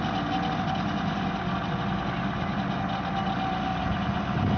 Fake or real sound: real